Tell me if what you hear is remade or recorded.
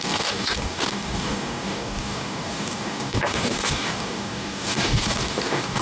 remade